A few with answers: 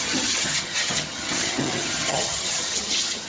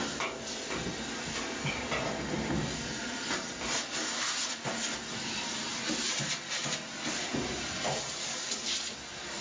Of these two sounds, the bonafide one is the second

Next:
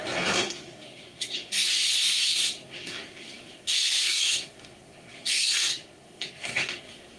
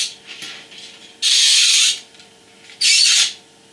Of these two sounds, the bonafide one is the second